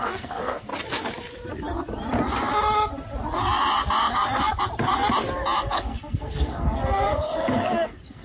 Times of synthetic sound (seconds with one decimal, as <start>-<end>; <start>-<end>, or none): 0.0-0.7; 5.6-8.2